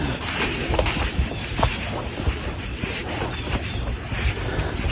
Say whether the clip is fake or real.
real